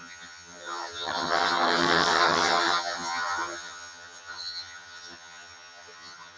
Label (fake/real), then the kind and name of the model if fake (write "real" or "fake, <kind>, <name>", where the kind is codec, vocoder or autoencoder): fake, vocoder, HiFi-GAN